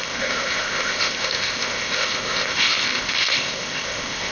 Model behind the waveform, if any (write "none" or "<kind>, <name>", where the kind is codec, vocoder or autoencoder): codec, ZipCodec